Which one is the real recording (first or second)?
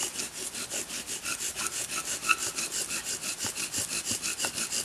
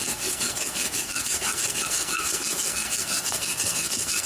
first